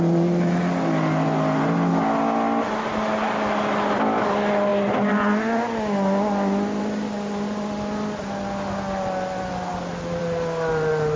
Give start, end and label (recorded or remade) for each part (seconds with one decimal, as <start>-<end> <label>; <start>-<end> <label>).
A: 0.0-11.2 recorded